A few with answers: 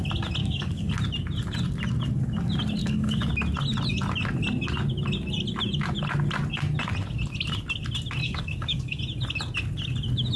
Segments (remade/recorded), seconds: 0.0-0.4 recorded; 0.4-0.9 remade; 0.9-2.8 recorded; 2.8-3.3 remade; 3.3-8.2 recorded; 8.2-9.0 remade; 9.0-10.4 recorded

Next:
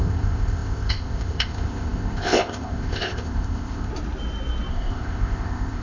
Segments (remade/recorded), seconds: 0.0-3.9 remade; 3.9-4.7 recorded; 4.7-5.8 remade